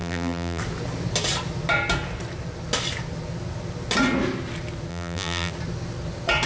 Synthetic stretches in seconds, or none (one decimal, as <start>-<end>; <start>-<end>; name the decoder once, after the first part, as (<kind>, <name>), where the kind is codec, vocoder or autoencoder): 0.0-0.6 (vocoder, BigVGAN v2); 4.9-5.5